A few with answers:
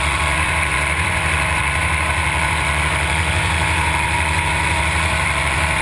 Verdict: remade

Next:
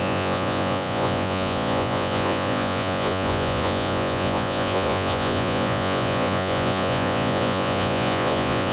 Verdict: remade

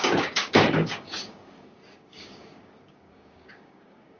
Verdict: remade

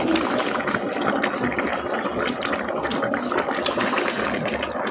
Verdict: recorded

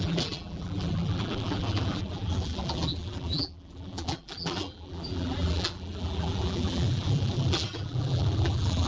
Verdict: remade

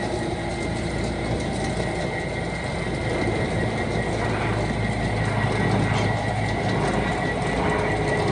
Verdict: recorded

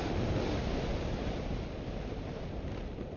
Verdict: recorded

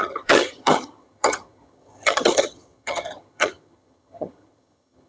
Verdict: remade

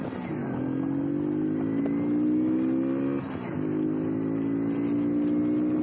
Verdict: recorded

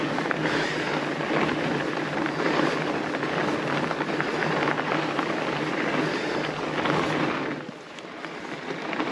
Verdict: recorded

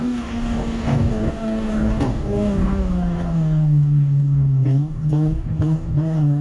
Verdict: remade